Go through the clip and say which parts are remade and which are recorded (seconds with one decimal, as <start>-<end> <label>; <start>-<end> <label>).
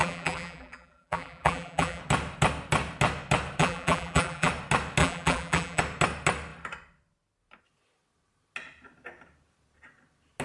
0.0-2.0 remade; 2.0-3.6 recorded; 3.6-4.5 remade; 4.5-5.0 recorded; 5.0-5.8 remade; 5.8-10.4 recorded